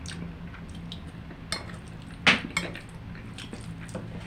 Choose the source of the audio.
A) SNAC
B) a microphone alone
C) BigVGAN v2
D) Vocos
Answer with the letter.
B